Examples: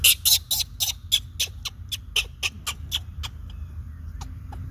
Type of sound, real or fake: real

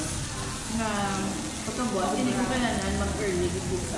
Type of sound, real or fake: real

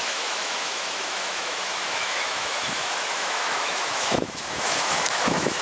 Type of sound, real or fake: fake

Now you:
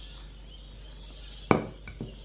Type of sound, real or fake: real